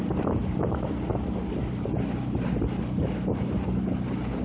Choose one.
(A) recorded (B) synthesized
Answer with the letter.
A